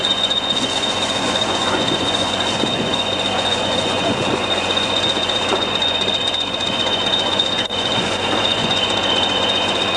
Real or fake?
fake